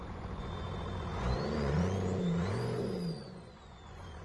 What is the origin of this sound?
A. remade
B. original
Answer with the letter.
A